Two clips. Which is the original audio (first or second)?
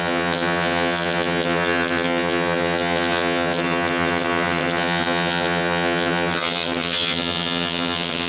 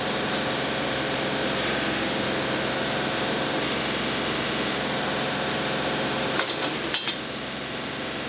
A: second